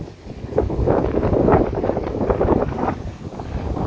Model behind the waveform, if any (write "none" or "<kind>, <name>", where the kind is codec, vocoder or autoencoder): codec, DAC